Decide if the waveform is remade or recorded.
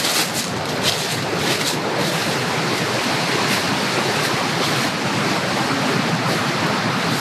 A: recorded